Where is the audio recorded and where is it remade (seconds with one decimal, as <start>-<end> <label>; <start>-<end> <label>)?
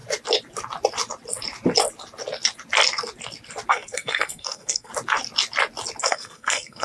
0.0-3.7 recorded; 3.7-4.9 remade; 4.9-6.0 recorded; 6.0-6.8 remade